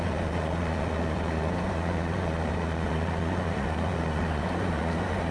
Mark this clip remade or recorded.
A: remade